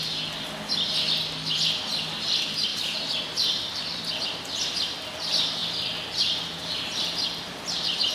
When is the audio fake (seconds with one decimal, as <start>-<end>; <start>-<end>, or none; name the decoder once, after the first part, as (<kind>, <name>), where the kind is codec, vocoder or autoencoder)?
2.7-4.0 (vocoder, BigVGAN v2)